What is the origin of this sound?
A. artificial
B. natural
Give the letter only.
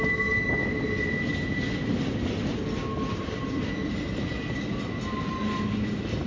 B